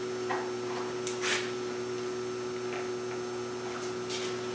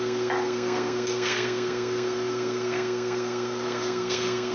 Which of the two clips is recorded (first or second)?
first